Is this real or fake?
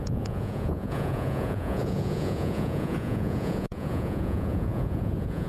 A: fake